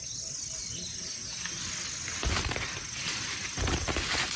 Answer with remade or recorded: recorded